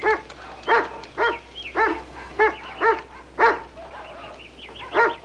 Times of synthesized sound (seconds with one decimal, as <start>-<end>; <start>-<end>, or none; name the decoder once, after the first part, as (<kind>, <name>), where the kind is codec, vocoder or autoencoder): 1.9-2.4 (codec, SNAC)